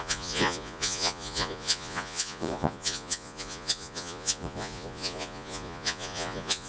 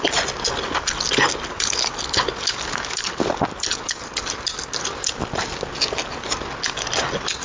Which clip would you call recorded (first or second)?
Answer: second